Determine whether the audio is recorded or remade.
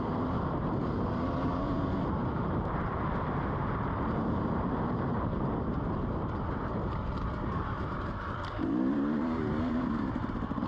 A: remade